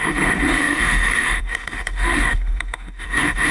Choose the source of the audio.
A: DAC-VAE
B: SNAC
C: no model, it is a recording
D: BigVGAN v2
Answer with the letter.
A